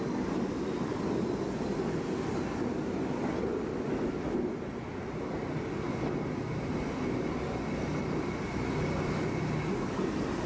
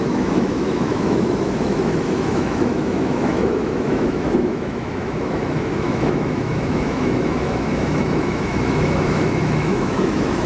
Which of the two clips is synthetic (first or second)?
second